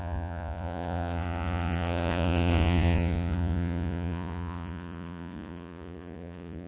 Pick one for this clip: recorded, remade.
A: remade